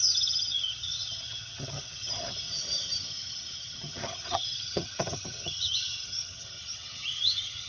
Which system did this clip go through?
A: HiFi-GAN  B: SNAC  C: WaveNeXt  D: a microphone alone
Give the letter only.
A